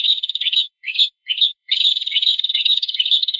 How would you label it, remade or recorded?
remade